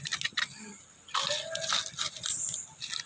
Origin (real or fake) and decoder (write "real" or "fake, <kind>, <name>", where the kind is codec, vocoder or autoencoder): real